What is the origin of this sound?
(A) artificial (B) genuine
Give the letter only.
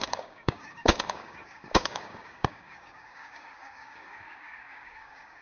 A